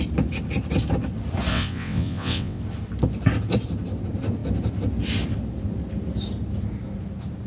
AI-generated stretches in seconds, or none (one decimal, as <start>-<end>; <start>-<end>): 1.5-2.6

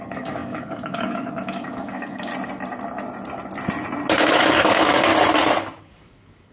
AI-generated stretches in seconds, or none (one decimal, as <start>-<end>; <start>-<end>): 0.0-2.3; 4.2-5.1; 5.8-6.5

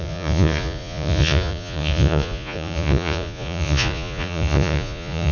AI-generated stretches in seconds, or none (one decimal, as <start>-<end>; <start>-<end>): 0.0-5.3

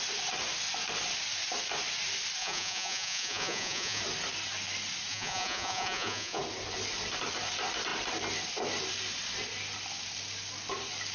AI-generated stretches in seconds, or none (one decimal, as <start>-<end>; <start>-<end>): 2.4-4.0; 5.1-6.4

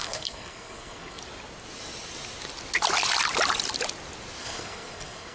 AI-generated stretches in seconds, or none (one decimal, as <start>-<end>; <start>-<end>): 0.0-1.2; 4.4-5.3

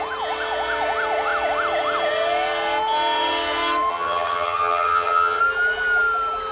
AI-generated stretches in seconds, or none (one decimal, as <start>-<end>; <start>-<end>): 3.9-5.4